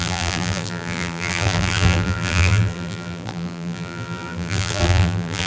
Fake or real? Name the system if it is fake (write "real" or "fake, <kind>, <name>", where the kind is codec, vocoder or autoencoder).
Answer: fake, vocoder, BigVGAN v2